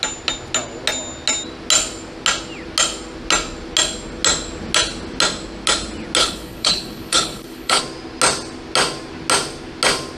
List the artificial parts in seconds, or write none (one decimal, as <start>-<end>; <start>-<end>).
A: 6.2-7.8